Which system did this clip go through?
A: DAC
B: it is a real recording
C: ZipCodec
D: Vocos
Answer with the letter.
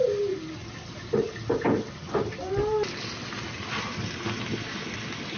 B